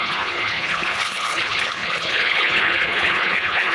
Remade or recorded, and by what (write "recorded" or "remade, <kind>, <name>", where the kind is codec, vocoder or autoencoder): remade, codec, HILCodec